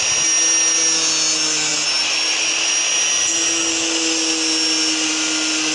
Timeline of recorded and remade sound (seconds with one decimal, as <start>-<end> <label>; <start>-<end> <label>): 0.0-5.7 recorded